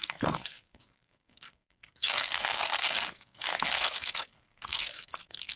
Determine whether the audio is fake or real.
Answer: fake